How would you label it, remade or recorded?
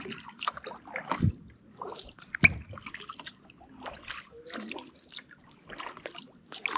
recorded